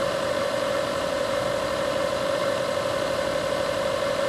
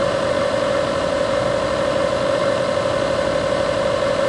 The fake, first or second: first